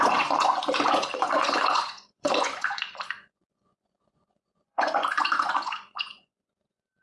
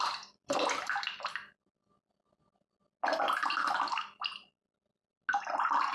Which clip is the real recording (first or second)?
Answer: second